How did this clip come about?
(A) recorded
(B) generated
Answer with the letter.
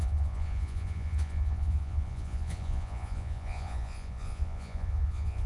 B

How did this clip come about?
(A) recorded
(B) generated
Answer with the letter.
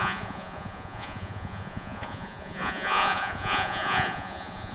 B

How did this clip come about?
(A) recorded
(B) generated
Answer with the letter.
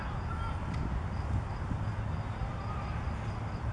A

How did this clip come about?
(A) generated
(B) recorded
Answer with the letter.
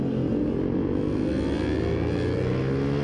B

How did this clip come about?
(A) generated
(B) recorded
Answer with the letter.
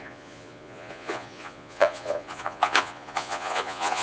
A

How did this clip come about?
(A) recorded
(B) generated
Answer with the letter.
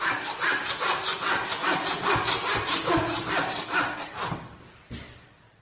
A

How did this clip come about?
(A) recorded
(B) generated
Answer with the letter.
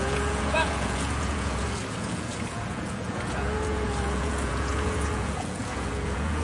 B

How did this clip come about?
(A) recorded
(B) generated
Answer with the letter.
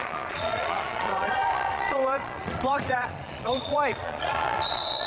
B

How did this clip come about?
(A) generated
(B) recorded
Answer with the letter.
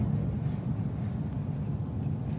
B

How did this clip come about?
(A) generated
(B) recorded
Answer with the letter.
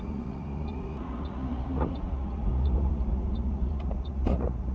A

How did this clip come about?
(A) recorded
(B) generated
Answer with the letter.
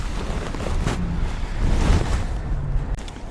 A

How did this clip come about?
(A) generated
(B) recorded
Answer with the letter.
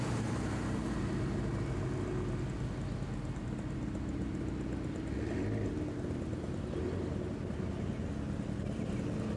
B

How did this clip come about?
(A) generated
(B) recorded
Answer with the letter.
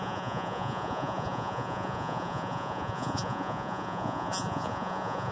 A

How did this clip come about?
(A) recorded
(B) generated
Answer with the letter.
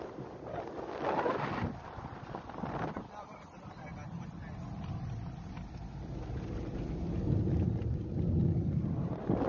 A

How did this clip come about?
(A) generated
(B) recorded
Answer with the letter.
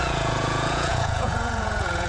A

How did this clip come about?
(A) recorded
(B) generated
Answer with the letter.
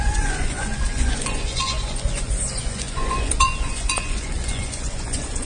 B